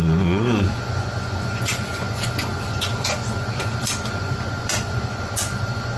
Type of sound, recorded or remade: remade